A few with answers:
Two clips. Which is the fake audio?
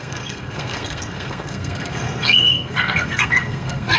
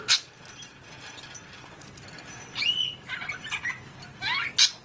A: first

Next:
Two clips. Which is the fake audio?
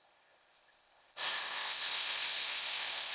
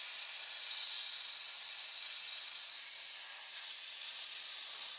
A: first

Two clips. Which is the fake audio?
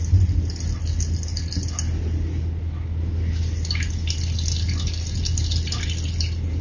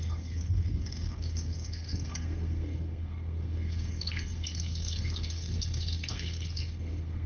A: second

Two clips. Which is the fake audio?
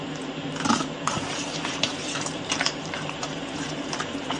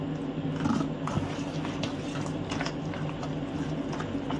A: first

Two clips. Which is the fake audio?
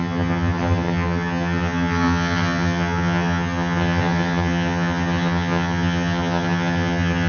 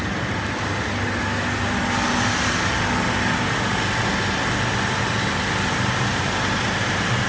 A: first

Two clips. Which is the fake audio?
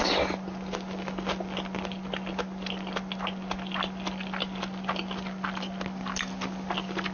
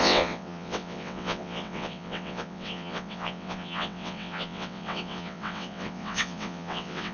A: second